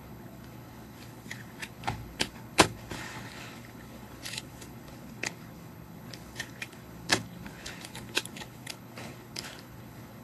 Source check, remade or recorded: remade